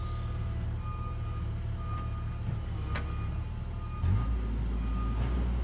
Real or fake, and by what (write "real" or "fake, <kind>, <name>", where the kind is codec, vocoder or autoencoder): real